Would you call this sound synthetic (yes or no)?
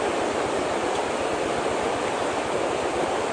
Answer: yes